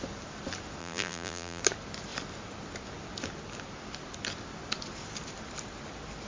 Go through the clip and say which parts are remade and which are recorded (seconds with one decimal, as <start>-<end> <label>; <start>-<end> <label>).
0.0-0.8 recorded; 0.8-1.6 remade; 1.6-6.3 recorded